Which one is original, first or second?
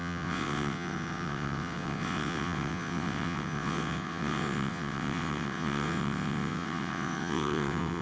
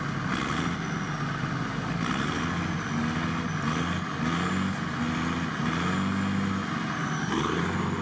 second